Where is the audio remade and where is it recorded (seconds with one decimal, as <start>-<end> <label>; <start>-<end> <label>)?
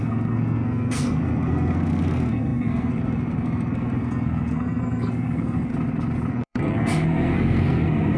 0.0-5.7 remade; 5.7-6.3 recorded; 6.3-8.2 remade